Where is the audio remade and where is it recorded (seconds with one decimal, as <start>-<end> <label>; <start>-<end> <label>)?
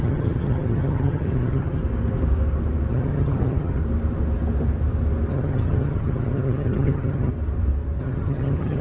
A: 0.0-1.8 remade; 1.8-2.9 recorded; 2.9-3.8 remade; 3.8-5.3 recorded; 5.3-7.3 remade; 7.3-8.0 recorded; 8.0-8.8 remade